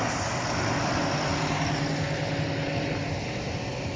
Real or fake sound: real